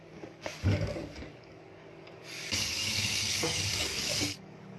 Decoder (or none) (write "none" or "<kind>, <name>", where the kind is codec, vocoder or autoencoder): codec, DAC